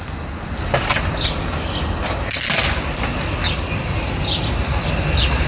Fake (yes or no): no